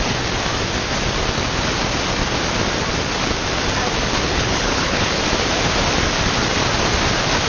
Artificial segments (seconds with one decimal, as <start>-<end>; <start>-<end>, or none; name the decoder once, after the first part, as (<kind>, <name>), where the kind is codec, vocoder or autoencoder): 4.3-5.2 (codec, HILCodec)